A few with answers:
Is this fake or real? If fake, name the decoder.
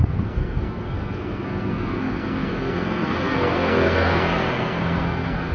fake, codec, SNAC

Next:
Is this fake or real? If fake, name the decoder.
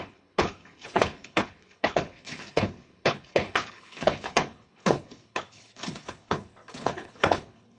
fake, codec, HILCodec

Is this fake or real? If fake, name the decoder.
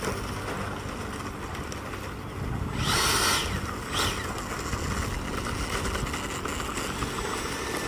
real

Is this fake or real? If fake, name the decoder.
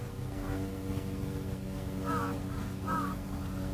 fake, codec, SNAC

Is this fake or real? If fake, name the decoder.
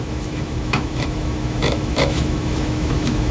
fake, autoencoder, DAC-VAE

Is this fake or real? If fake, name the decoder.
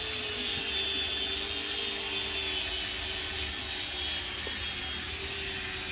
real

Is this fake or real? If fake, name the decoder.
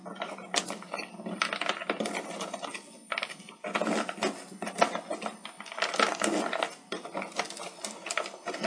real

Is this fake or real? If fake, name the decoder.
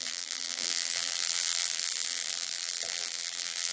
fake, vocoder, BigVGAN v2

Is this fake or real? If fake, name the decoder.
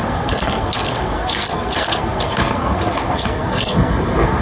fake, codec, SNAC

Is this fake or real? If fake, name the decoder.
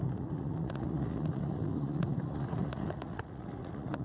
fake, vocoder, Vocos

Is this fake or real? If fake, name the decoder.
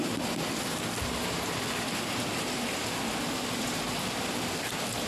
real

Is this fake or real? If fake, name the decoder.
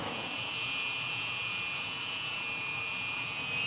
fake, vocoder, Vocos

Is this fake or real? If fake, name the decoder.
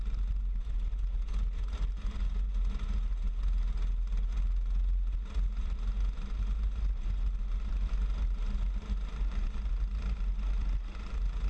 real